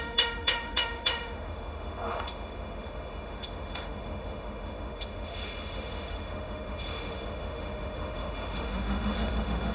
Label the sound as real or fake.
fake